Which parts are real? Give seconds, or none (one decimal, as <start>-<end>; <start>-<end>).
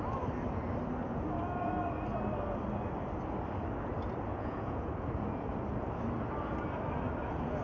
0.0-4.3; 4.9-7.6